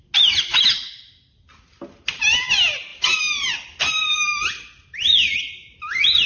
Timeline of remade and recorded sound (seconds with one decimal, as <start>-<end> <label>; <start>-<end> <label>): 0.0-6.3 recorded